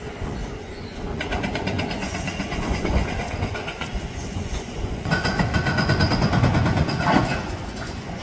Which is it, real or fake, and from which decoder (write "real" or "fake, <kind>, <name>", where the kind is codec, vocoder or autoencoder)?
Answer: fake, vocoder, Vocos